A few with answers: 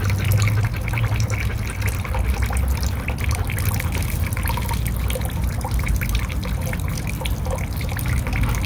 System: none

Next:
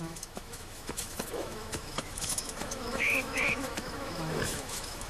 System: autoencoder, DAC-VAE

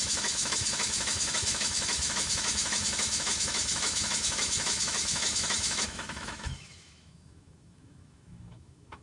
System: autoencoder, DAC-VAE